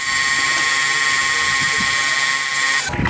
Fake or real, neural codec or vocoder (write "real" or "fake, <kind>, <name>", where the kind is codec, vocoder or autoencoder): real